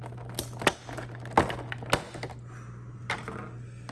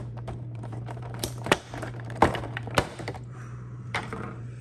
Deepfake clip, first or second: second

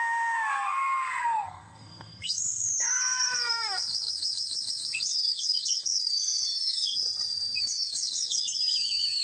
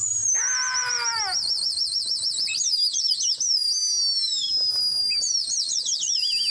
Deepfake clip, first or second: first